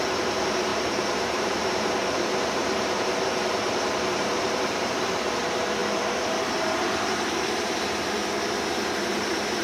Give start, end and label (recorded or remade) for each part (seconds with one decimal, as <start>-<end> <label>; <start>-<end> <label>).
0.0-9.6 remade